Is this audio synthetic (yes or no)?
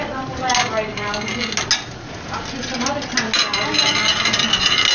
no